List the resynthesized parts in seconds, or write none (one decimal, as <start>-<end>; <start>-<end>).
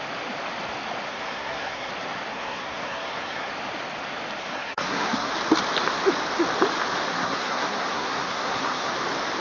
1.1-1.9; 2.3-3.5; 4.4-5.3; 7.1-8.9